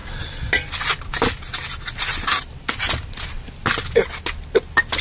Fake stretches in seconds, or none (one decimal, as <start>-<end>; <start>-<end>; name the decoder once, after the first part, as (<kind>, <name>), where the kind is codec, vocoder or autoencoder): 2.5-3.6 (vocoder, BigVGAN v2)